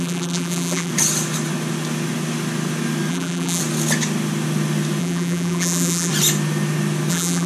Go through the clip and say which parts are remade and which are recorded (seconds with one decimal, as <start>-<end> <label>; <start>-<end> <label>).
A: 0.0-0.9 remade; 0.9-3.1 recorded; 3.1-3.6 remade; 3.6-5.0 recorded; 5.0-6.1 remade; 6.1-7.1 recorded; 7.1-7.5 remade